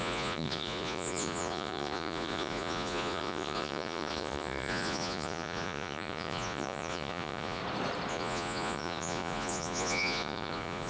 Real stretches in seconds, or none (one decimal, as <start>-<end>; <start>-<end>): 7.6-8.1